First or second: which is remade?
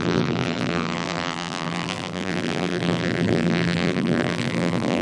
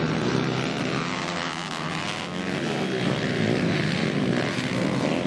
first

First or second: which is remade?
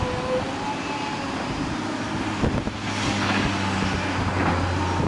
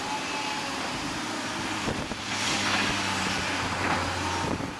second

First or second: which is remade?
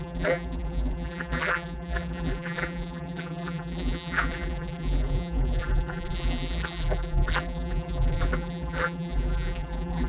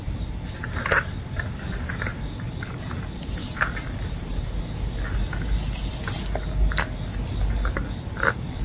first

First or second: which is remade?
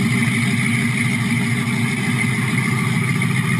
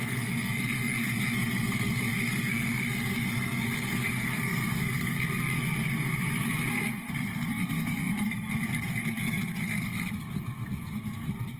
second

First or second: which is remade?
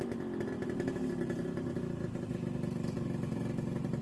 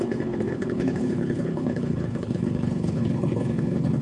second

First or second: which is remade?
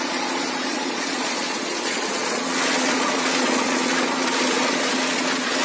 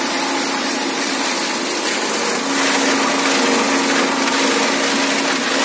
first